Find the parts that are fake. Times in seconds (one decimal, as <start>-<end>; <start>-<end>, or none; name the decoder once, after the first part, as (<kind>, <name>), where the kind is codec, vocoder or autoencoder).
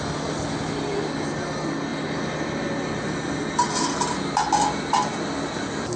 none